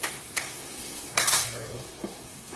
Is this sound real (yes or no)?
no